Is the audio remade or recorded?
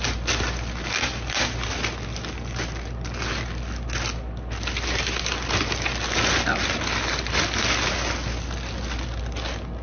recorded